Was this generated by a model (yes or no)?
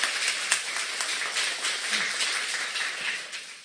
no